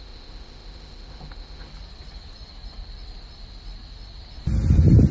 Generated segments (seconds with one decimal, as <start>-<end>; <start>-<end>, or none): 0.0-1.7